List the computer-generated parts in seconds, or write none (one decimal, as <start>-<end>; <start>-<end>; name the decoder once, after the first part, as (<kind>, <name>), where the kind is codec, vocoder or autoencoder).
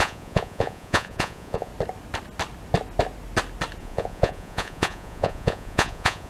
0.0-1.7 (vocoder, Vocos); 3.8-6.3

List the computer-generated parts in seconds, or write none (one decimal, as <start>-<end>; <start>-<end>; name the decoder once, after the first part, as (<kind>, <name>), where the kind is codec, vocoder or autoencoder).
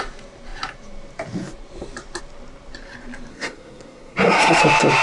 3.3-4.6 (codec, SNAC)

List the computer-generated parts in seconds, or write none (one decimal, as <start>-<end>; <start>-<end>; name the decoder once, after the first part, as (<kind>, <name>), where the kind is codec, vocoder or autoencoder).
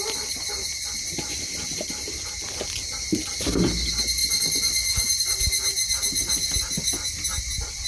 none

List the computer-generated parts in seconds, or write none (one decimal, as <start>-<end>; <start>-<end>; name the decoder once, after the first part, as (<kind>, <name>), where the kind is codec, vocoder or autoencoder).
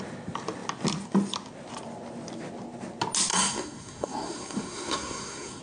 3.3-5.6 (codec, SNAC)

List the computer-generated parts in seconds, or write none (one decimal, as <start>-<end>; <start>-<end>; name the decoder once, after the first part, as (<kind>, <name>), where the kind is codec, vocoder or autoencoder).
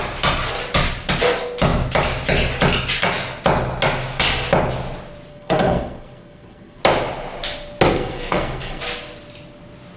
5.3-6.8 (codec, SNAC); 7.9-8.8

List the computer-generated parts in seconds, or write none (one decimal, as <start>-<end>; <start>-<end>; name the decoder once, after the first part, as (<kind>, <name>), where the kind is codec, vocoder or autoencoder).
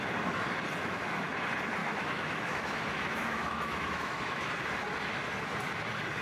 0.8-1.3 (autoencoder, DAC-VAE); 1.8-4.5